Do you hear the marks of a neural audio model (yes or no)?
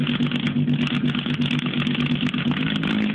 no